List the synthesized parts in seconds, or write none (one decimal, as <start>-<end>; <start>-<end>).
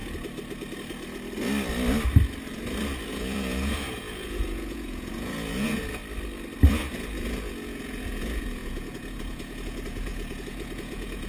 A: 3.1-6.0; 6.7-11.3